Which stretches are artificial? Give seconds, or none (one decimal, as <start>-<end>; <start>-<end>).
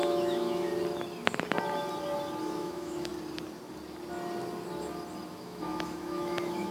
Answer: 0.0-0.7; 2.4-3.1; 5.3-6.7